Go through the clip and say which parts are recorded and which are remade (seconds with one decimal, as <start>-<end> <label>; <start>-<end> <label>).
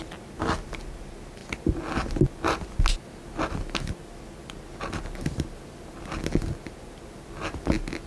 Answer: 0.0-8.1 recorded